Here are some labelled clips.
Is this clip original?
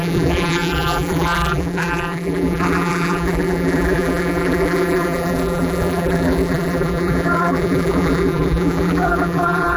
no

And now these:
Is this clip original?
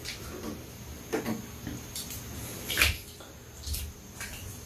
yes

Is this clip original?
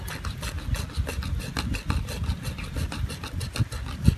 yes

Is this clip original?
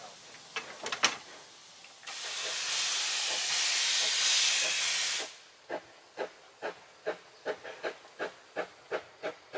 yes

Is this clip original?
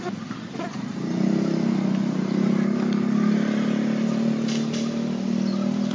yes